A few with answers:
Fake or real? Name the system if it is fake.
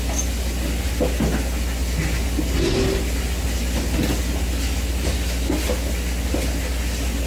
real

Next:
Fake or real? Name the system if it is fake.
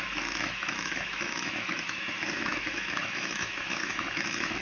fake, autoencoder, DAC-VAE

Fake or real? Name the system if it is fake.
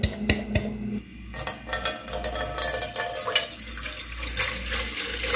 real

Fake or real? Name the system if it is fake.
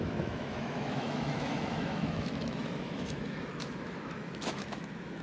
fake, autoencoder, DAC-VAE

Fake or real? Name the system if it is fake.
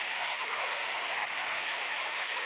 fake, autoencoder, DAC-VAE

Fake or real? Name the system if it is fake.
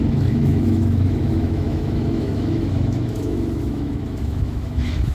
fake, autoencoder, DAC-VAE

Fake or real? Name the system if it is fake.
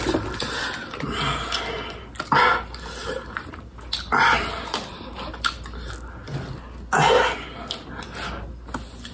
real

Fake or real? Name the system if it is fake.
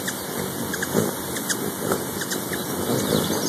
real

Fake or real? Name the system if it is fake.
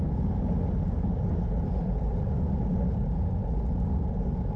real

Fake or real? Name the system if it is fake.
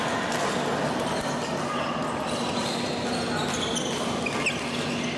real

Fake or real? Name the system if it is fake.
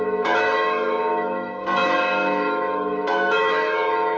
fake, autoencoder, DAC-VAE